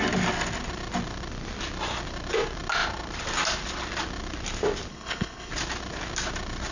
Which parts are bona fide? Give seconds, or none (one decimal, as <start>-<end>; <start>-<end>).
0.0-4.9; 5.5-6.7